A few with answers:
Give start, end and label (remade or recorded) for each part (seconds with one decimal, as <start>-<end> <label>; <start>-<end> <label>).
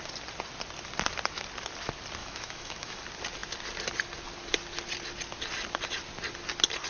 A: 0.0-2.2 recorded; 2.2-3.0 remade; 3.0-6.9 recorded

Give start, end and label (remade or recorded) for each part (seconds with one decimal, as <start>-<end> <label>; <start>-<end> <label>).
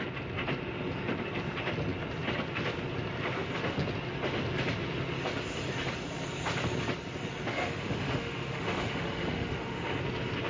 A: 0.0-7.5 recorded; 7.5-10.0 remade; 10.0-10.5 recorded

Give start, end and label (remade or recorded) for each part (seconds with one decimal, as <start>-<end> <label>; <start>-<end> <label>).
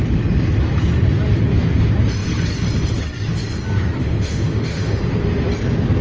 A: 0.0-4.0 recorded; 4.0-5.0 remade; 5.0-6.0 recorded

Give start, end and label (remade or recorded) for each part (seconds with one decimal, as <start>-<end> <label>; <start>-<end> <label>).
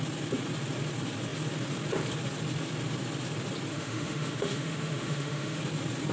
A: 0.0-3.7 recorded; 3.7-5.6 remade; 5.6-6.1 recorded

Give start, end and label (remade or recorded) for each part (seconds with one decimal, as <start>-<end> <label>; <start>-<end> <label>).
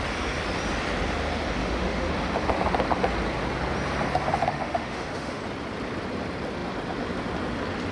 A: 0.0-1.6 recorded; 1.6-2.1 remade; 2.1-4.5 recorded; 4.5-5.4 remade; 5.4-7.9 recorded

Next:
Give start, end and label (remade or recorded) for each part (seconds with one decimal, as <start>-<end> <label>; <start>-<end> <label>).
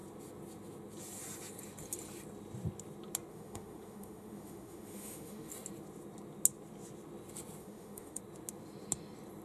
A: 0.0-3.3 recorded; 3.3-5.5 remade; 5.5-7.6 recorded; 7.6-8.2 remade; 8.2-9.4 recorded